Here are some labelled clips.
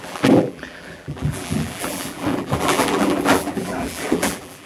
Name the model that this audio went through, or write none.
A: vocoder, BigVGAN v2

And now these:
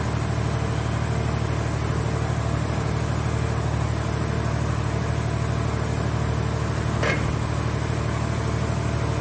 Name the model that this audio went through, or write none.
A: none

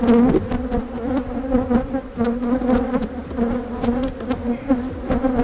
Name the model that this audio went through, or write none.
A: none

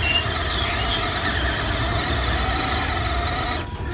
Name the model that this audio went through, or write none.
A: none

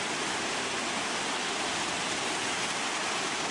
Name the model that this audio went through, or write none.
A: none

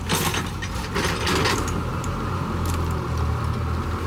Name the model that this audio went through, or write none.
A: none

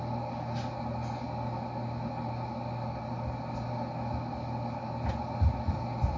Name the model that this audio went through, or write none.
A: none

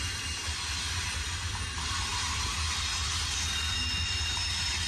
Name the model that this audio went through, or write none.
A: none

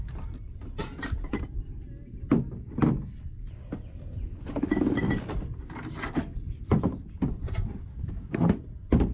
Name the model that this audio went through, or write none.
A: none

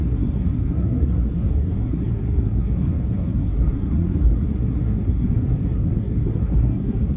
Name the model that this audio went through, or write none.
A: codec, SNAC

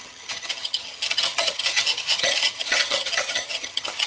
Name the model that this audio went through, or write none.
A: vocoder, HiFi-GAN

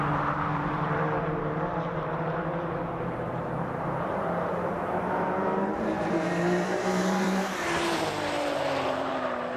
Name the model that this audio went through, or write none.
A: vocoder, BigVGAN v2